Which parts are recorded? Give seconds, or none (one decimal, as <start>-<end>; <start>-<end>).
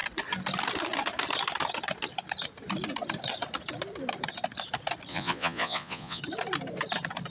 0.0-5.1; 6.2-7.3